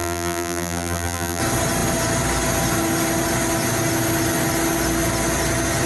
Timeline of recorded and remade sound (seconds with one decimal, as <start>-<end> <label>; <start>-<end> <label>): 0.0-1.4 remade; 1.4-5.9 recorded